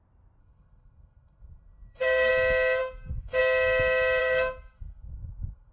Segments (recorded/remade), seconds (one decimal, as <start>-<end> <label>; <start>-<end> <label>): 0.0-0.4 recorded; 0.4-2.3 remade; 2.3-2.8 recorded; 2.8-3.4 remade; 3.4-4.2 recorded; 4.2-5.7 remade